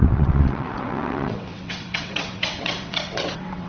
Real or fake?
fake